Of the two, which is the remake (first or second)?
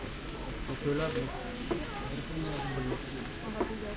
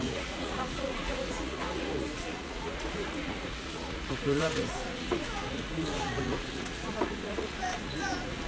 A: second